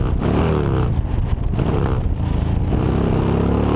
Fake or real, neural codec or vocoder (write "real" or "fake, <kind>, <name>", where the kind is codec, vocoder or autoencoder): real